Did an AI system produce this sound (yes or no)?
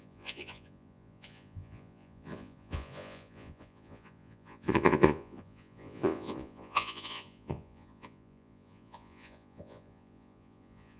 yes